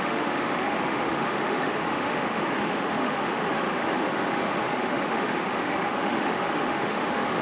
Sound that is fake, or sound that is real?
fake